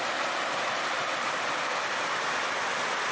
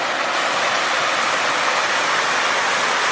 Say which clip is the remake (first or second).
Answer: first